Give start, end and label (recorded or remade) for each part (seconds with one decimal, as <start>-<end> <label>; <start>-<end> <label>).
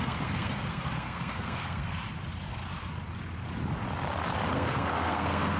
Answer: 0.0-2.0 remade; 2.0-4.5 recorded; 4.5-5.6 remade